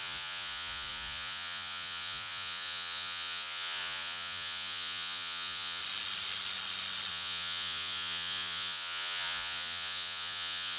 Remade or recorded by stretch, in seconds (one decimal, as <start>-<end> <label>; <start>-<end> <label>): 0.0-5.8 remade; 5.8-7.1 recorded; 7.1-10.8 remade